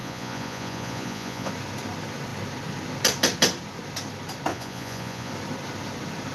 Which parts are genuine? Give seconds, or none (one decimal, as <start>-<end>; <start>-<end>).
1.5-4.5; 5.3-6.3